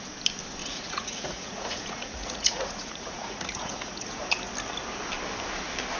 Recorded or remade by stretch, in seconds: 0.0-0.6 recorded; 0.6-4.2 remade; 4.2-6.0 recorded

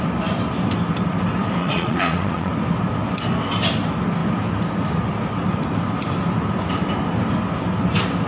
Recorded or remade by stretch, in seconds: 0.0-1.6 recorded; 1.6-2.5 remade; 2.5-8.3 recorded